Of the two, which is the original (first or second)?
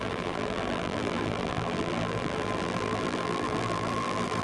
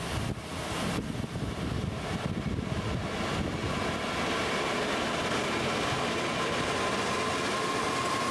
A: second